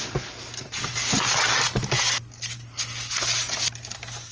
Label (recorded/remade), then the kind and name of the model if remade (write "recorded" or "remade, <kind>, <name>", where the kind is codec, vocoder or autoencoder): recorded